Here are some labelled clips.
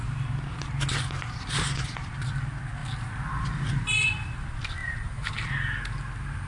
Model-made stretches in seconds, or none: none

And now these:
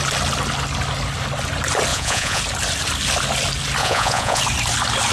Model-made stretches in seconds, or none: 1.9-2.4 (vocoder, Vocos); 3.8-4.4

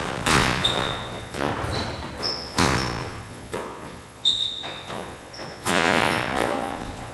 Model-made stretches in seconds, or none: 0.0-1.5 (vocoder, Vocos); 2.2-7.1

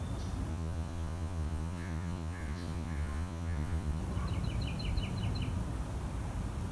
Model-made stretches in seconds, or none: 0.5-4.0 (vocoder, Vocos)

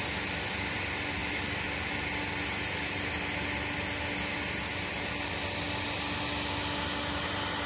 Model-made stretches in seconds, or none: none

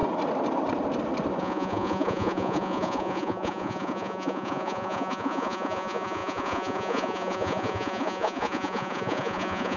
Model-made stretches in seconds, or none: 1.4-9.8 (vocoder, Vocos)

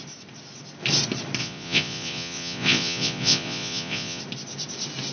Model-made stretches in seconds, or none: 1.4-4.2 (vocoder, Vocos)